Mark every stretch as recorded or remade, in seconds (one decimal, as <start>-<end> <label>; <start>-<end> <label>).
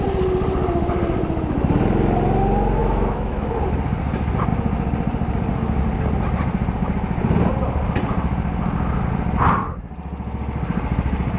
0.0-2.8 recorded; 2.8-3.6 remade; 3.6-11.4 recorded